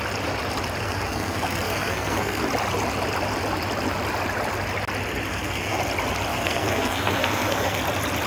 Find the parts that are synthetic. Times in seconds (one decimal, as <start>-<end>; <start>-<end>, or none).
0.8-2.4; 5.3-5.8; 6.3-7.8